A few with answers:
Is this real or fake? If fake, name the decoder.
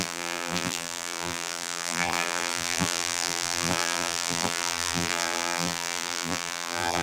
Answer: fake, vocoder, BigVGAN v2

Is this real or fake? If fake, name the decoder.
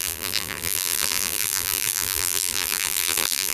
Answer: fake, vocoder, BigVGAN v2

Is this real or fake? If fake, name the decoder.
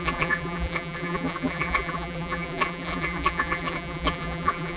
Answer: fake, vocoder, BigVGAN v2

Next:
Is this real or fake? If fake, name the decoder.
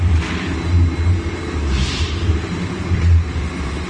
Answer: fake, vocoder, BigVGAN v2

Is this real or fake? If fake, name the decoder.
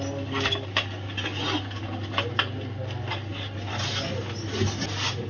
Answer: real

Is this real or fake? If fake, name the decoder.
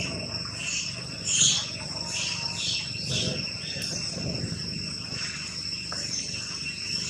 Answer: real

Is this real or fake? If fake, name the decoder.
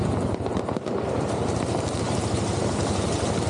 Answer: fake, vocoder, BigVGAN v2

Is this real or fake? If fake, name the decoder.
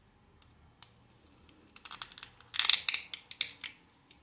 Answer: real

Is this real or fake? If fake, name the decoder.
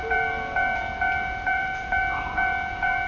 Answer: fake, vocoder, BigVGAN v2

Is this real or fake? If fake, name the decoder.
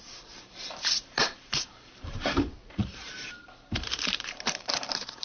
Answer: fake, vocoder, BigVGAN v2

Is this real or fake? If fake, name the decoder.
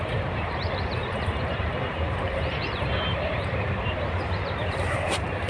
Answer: fake, vocoder, BigVGAN v2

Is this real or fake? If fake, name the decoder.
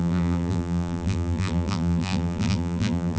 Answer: fake, vocoder, BigVGAN v2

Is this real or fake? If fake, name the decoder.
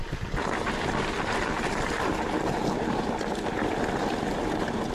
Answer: fake, vocoder, BigVGAN v2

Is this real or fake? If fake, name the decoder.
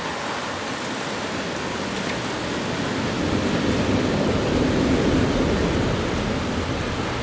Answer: real